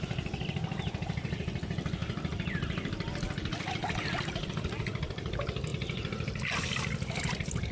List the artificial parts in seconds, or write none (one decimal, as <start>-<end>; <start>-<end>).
none

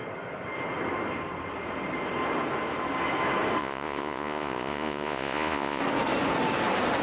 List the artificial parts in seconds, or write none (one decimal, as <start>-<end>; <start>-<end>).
3.6-5.8

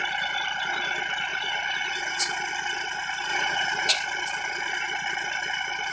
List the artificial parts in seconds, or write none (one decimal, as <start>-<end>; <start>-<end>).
1.3-2.2; 3.3-3.9

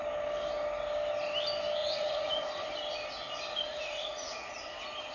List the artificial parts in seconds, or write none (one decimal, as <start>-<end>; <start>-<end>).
1.8-2.7; 3.7-4.5

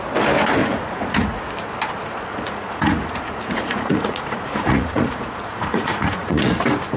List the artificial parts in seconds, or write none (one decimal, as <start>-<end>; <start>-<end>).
0.6-1.4; 2.3-6.5

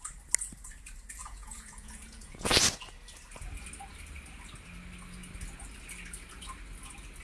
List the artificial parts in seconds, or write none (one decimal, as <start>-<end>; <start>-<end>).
1.2-2.5